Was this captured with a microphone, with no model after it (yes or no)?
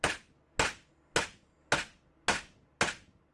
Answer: yes